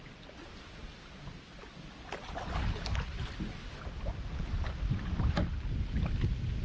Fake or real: real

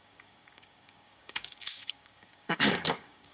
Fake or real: fake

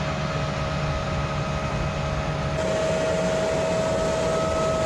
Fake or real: real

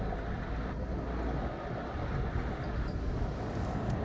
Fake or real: real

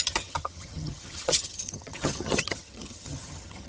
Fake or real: fake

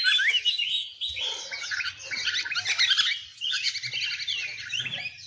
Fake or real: real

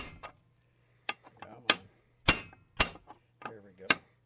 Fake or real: real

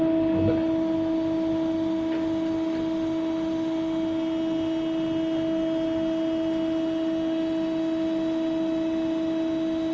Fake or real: real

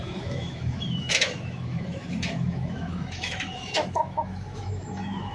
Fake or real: fake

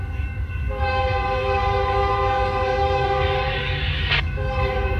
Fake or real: fake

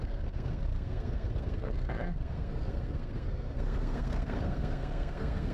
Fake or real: fake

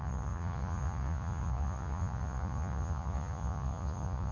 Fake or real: fake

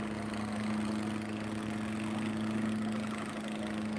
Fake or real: real